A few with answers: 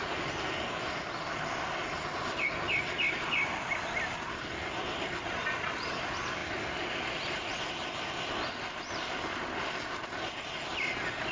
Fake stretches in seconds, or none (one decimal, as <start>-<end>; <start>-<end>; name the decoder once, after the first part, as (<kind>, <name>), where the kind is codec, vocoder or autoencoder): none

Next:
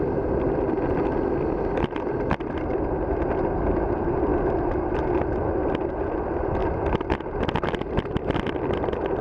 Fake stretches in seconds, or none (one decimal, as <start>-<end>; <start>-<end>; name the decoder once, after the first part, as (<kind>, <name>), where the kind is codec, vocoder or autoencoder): none

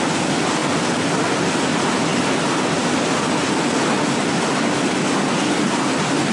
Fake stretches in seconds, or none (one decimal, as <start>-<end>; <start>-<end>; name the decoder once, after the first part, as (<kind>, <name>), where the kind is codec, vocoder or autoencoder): none

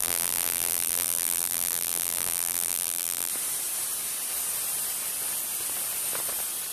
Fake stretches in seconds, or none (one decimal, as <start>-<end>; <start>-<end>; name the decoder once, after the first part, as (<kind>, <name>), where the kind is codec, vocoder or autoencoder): 0.0-3.3 (vocoder, BigVGAN v2)